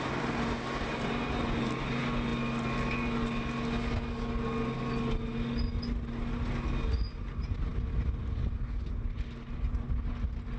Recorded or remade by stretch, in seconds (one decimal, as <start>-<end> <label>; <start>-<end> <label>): 0.0-10.6 recorded